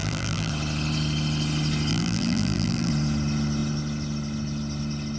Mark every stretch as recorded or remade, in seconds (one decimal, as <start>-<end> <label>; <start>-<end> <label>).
0.0-0.5 remade; 0.5-1.9 recorded; 1.9-2.9 remade; 2.9-5.2 recorded